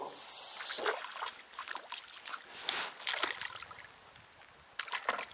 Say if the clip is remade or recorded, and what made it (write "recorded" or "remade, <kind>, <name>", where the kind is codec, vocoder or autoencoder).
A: recorded